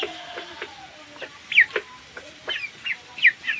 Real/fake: real